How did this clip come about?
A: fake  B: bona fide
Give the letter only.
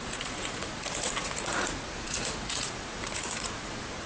A